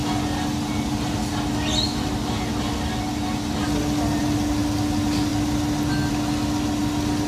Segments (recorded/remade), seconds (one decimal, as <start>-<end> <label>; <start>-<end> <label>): 0.0-7.3 recorded

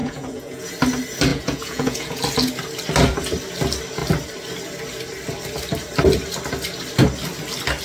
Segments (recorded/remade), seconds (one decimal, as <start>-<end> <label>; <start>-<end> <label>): 0.0-0.7 remade; 0.7-1.3 recorded; 1.3-2.2 remade; 2.2-7.8 recorded

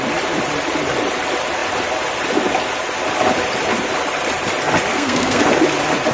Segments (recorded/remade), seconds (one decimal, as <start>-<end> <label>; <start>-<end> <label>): 0.0-4.9 recorded; 4.9-5.4 remade; 5.4-6.1 recorded

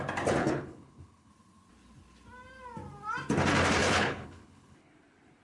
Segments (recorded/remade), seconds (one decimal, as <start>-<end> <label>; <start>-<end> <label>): 0.0-0.4 recorded; 0.4-1.3 remade; 1.3-3.8 recorded; 3.8-4.9 remade; 4.9-5.4 recorded

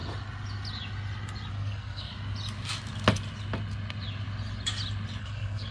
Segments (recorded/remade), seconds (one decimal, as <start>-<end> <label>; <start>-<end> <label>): 0.0-1.5 recorded; 1.5-2.1 remade; 2.1-5.2 recorded; 5.2-5.7 remade

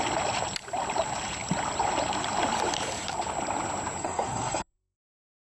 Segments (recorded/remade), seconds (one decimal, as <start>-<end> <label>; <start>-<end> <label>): 0.0-4.0 recorded; 4.0-5.5 remade

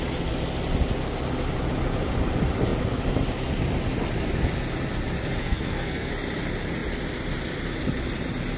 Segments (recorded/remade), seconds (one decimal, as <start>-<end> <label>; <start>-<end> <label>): 0.0-5.4 recorded; 5.4-6.1 remade; 6.1-8.6 recorded

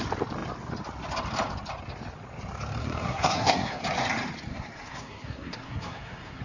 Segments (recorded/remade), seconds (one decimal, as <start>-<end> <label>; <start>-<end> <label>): 0.0-2.8 recorded; 2.8-3.8 remade; 3.8-4.5 recorded; 4.5-6.4 remade